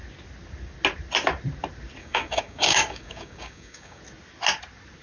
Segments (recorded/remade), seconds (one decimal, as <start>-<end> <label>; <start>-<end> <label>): 0.0-2.0 recorded; 2.0-4.0 remade; 4.0-5.0 recorded